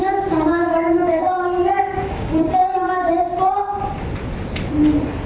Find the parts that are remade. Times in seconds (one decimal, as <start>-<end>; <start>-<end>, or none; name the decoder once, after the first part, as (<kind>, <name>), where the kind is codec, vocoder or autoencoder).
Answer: 0.0-1.2 (codec, DAC); 1.8-2.6

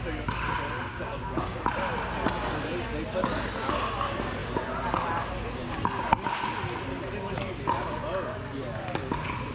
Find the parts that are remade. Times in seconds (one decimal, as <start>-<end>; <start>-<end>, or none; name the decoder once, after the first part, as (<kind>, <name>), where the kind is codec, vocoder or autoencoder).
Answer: 0.9-1.6 (codec, DAC)

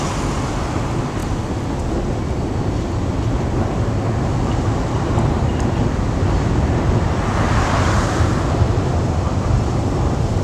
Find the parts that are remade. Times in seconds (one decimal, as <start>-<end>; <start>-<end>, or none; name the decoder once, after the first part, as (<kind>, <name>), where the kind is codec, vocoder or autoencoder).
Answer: none

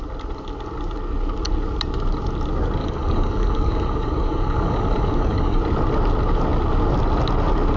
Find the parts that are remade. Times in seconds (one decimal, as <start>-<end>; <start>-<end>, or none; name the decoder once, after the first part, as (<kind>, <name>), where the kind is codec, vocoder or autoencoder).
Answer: 2.8-5.6 (codec, DAC)

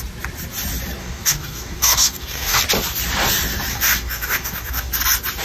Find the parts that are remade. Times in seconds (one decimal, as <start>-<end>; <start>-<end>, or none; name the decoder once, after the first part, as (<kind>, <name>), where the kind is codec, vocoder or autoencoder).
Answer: 1.0-2.6 (codec, DAC); 3.7-4.9

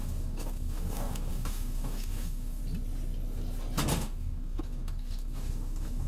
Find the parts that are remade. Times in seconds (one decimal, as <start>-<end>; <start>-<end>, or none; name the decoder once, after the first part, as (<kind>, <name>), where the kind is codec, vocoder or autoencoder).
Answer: 0.0-2.6 (codec, DAC); 4.0-6.1

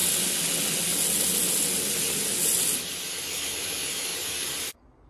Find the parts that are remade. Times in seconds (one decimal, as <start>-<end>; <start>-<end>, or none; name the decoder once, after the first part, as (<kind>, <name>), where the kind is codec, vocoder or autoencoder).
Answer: 3.1-5.1 (codec, DAC)

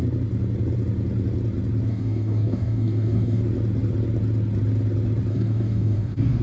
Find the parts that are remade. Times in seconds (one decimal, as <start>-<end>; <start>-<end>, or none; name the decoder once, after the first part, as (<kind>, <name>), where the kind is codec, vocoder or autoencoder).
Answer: 1.9-3.4 (codec, DAC); 5.3-6.4